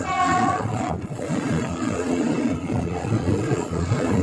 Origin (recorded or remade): remade